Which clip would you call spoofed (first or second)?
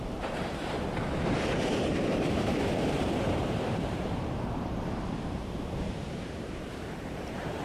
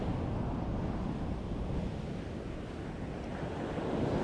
first